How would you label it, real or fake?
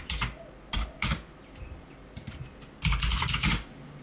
real